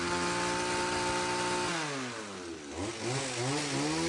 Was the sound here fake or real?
real